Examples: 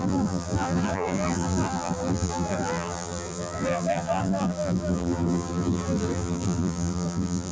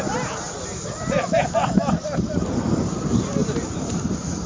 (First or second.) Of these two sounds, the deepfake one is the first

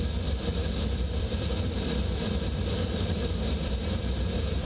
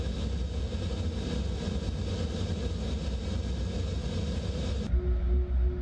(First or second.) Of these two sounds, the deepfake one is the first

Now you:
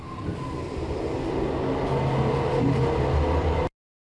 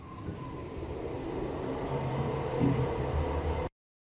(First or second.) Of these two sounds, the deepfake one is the second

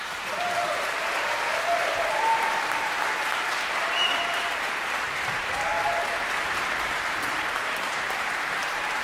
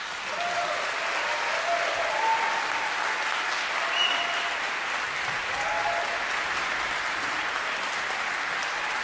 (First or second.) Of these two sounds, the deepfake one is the first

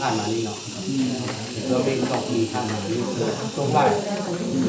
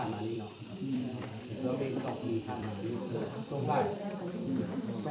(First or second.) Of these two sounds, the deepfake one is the second